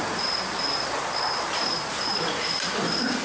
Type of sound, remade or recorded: recorded